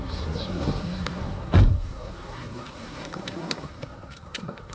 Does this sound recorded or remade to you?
remade